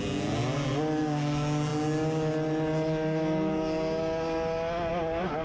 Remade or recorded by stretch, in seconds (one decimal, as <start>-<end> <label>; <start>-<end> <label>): 0.0-5.4 recorded